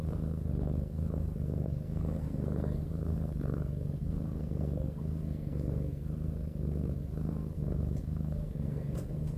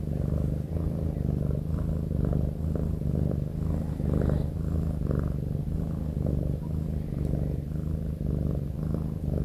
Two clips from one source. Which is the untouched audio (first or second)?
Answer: second